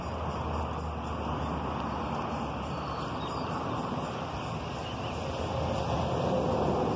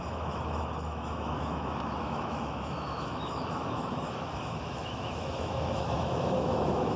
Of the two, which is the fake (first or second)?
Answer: second